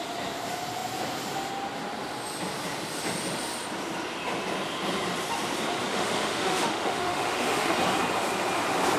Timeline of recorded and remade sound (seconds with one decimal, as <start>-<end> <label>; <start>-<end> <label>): 0.0-5.9 recorded; 5.9-7.7 remade; 7.7-9.0 recorded